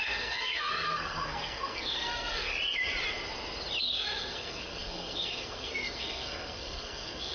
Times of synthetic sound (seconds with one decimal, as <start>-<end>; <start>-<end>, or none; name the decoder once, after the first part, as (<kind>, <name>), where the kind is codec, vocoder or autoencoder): 0.0-2.5 (codec, SNAC); 3.8-7.3